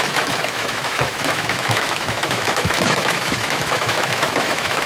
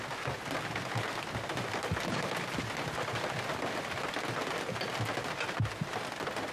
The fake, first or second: first